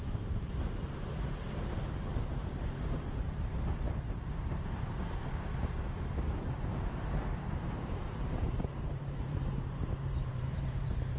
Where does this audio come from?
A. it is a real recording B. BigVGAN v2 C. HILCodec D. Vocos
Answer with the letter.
B